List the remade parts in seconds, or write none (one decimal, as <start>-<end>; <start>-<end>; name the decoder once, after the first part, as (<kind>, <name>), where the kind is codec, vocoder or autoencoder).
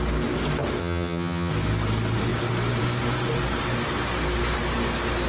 0.8-1.5 (vocoder, HiFi-GAN)